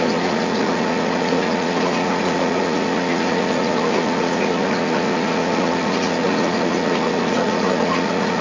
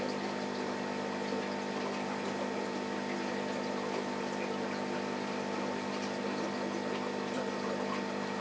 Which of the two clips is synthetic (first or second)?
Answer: first